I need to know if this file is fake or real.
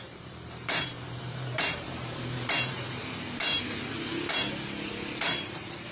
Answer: fake